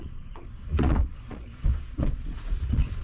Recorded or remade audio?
remade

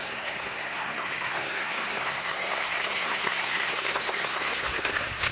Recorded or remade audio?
remade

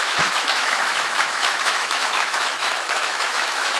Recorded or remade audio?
remade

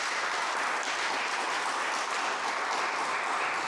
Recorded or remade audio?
remade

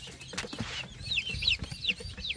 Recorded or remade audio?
recorded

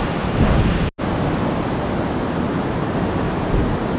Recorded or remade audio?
recorded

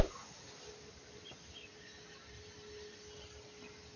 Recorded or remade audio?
recorded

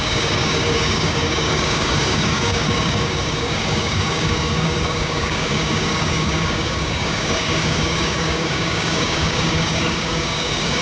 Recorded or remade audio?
remade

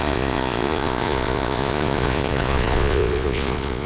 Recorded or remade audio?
remade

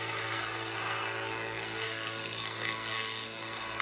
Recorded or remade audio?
remade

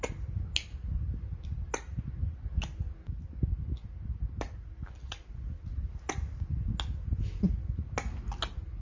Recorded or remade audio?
recorded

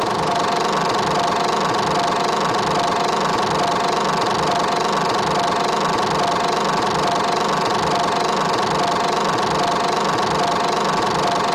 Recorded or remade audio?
recorded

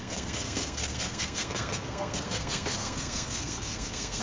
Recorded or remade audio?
remade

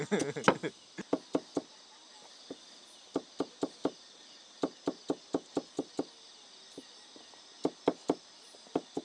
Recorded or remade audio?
recorded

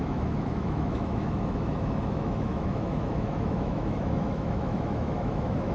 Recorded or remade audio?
remade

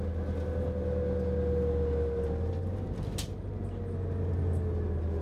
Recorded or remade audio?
recorded